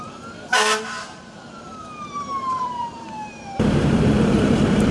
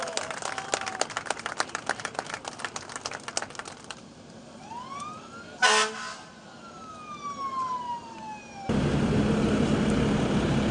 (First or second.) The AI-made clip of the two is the first